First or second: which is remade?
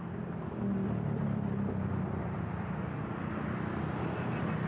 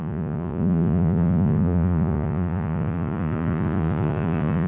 second